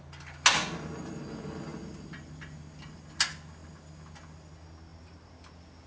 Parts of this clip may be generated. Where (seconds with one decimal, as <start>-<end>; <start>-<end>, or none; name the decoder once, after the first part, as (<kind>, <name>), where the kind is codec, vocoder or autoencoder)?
none